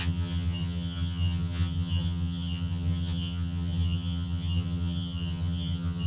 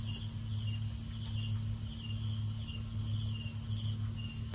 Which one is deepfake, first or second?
first